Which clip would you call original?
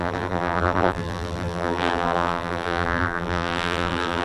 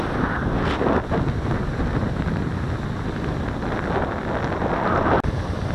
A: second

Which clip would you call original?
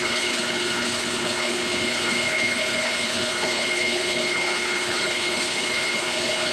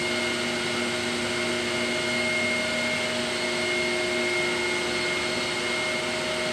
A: second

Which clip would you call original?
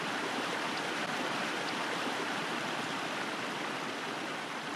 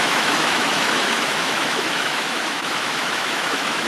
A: first